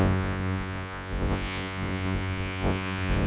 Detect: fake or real fake